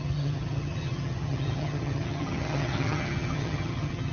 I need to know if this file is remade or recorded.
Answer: remade